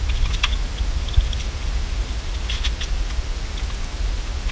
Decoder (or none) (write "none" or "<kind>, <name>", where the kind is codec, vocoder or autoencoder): vocoder, BigVGAN v2